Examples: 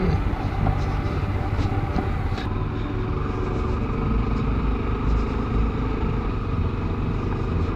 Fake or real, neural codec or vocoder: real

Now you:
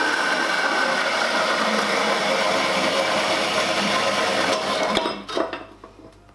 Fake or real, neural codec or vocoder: fake, vocoder, BigVGAN v2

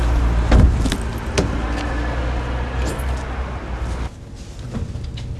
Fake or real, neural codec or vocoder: real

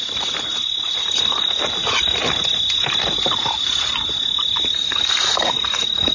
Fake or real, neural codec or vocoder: real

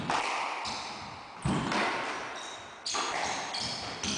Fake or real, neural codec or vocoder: real